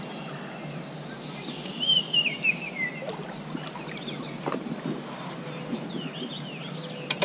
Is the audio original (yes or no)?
yes